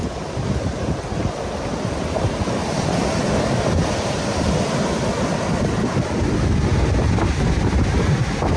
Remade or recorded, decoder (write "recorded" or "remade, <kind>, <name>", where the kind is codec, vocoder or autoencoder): recorded